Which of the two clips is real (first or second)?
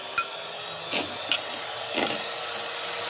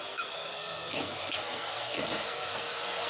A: first